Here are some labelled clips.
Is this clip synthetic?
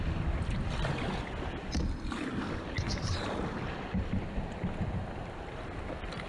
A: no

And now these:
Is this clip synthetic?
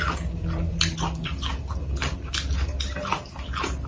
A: no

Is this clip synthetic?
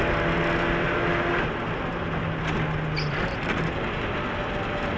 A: no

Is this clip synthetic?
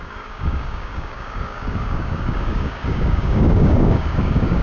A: yes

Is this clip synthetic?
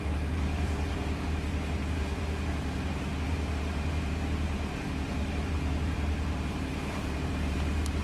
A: yes